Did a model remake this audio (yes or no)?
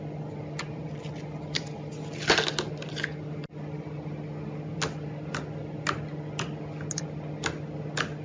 no